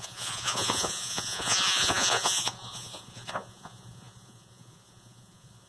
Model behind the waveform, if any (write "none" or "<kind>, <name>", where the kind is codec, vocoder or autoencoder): vocoder, Vocos